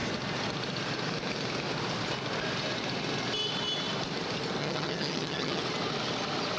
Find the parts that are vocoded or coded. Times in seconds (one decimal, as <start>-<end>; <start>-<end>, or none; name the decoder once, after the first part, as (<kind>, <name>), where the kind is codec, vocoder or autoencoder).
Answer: 4.6-5.6 (vocoder, HiFi-GAN)